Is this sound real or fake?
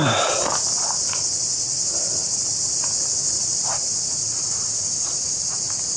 real